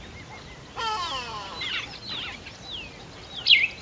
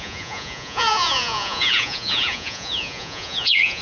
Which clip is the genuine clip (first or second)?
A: first